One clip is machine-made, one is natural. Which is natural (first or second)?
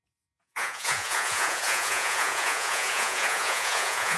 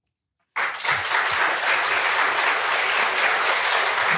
second